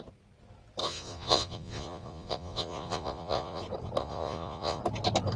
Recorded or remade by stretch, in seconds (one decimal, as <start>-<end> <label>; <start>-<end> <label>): 0.0-0.8 recorded; 0.8-3.6 remade; 3.6-4.0 recorded; 4.0-4.8 remade; 4.8-5.4 recorded